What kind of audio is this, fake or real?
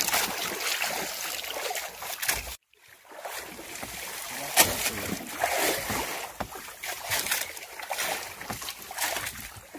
real